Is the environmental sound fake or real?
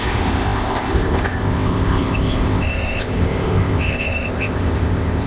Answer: fake